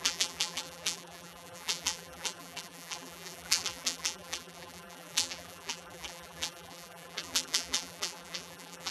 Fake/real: fake